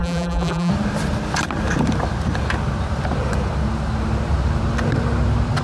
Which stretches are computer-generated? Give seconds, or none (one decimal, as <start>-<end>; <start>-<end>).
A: 0.0-0.7